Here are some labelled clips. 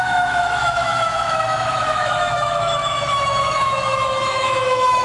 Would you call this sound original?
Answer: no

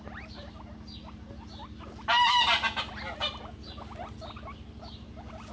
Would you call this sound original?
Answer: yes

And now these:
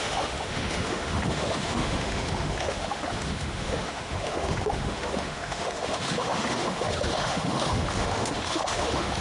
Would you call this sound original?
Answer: no